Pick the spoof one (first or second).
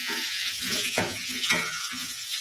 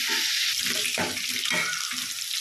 first